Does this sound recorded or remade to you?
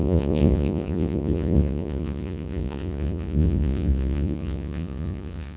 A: remade